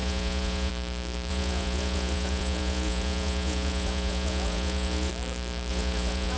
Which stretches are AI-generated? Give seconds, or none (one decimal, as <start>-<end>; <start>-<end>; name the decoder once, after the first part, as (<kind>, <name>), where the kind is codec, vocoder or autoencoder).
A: 0.0-0.7 (vocoder, Vocos); 1.3-5.1; 5.7-6.4